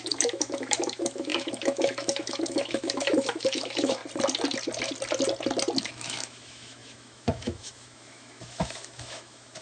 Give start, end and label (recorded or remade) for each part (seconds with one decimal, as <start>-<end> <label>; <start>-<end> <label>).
0.0-4.0 remade; 4.0-5.8 recorded; 5.8-9.6 remade